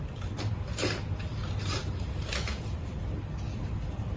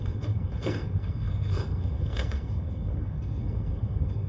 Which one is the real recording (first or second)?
first